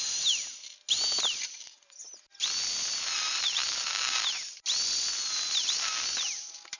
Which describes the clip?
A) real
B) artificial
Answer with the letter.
A